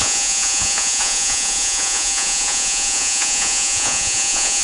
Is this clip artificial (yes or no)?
yes